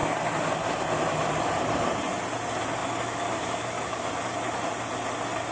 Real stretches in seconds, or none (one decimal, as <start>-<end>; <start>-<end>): 0.0-2.8; 4.1-5.5